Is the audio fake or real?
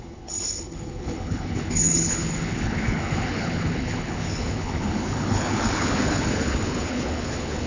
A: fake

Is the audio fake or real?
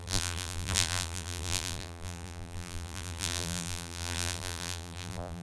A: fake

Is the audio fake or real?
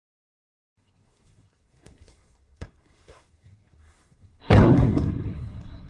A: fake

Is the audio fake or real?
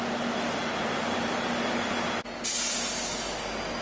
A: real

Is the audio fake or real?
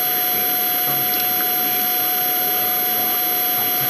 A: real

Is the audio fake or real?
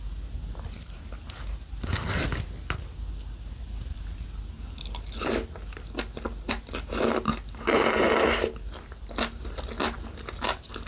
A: real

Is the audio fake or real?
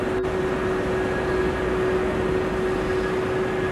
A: real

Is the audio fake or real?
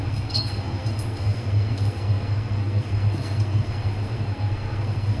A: fake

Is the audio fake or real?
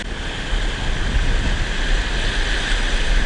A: real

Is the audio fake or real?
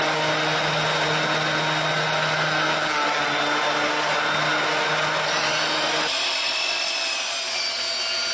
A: real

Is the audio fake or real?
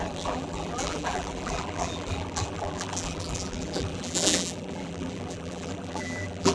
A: fake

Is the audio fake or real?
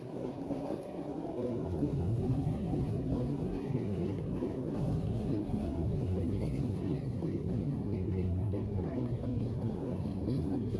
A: fake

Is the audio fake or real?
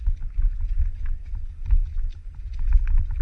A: real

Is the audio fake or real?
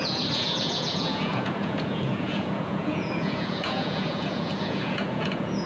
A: fake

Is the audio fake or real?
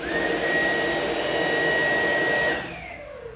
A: real